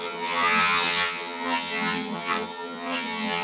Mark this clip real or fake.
fake